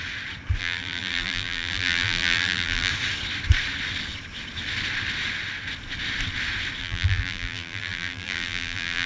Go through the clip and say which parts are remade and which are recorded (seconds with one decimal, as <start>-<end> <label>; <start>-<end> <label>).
0.0-0.6 recorded; 0.6-2.9 remade; 2.9-6.8 recorded; 6.8-9.1 remade